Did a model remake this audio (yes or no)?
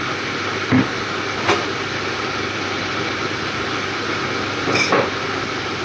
no